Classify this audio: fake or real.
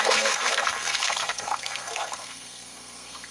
fake